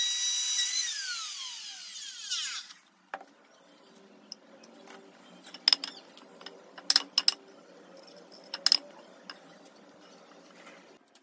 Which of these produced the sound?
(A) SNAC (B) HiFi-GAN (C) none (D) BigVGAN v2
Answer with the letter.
C